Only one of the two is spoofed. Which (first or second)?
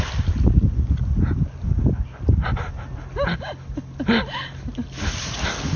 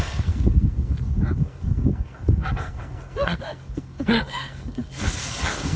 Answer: second